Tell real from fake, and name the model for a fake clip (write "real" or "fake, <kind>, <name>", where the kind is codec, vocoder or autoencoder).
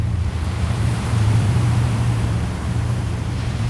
fake, vocoder, BigVGAN v2